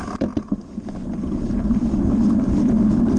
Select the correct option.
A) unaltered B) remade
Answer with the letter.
A